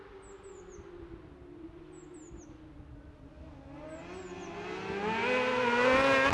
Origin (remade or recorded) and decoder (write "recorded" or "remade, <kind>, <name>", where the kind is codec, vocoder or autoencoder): recorded